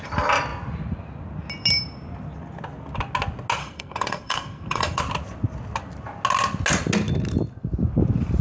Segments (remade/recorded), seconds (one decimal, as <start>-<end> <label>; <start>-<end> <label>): 0.0-3.6 recorded; 3.6-5.0 remade; 5.0-8.4 recorded